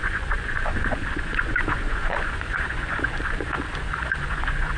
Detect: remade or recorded remade